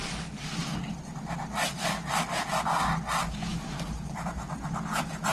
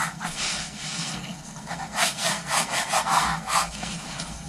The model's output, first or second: second